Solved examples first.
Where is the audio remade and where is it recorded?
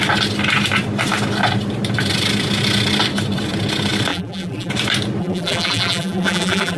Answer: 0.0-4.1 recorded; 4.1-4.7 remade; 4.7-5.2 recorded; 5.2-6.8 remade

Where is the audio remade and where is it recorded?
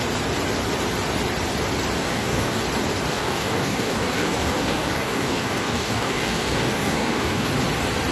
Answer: 0.0-2.0 recorded; 2.0-2.6 remade; 2.6-3.1 recorded; 3.1-7.5 remade; 7.5-8.1 recorded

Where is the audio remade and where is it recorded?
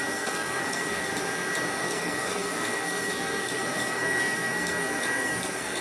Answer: 0.0-1.1 remade; 1.1-1.8 recorded; 1.8-5.8 remade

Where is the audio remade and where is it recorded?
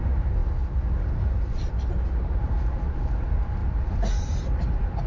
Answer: 0.0-0.4 remade; 0.4-3.2 recorded; 3.2-3.6 remade; 3.6-5.1 recorded